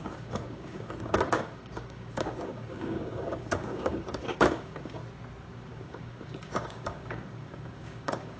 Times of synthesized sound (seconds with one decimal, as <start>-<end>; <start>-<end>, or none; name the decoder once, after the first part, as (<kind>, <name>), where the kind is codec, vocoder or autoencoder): 0.0-5.0 (codec, DAC); 5.7-8.4